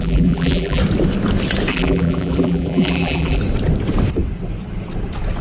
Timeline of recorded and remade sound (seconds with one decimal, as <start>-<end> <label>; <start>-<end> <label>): 0.0-0.8 remade; 0.8-1.7 recorded; 1.7-3.4 remade; 3.4-5.4 recorded